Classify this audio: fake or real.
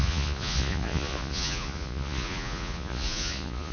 fake